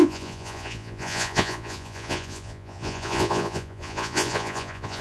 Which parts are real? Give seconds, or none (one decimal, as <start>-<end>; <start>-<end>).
none